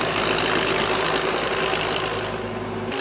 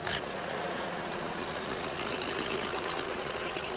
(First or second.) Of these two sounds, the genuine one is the first